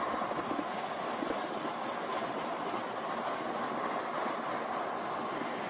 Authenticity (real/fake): real